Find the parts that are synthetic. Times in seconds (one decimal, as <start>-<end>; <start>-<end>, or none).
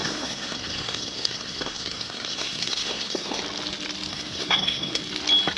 0.0-3.4; 4.1-5.0